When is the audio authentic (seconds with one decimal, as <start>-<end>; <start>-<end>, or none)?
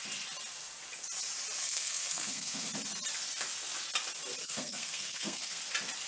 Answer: 0.0-1.6; 2.7-4.4; 5.6-6.1